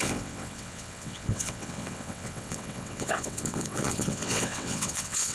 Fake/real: fake